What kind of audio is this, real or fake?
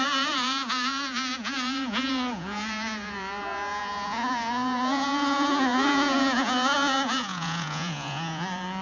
fake